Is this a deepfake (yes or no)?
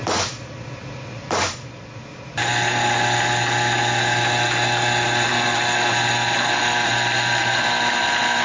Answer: no